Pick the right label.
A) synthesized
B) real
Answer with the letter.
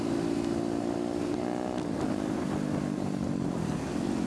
B